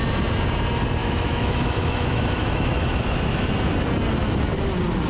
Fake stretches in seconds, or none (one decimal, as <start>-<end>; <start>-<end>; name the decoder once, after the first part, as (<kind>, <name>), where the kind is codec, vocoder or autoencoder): 1.0-3.5 (autoencoder, DAC-VAE)